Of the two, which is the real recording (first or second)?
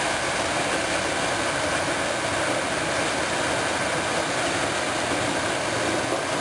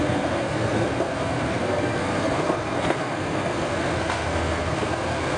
first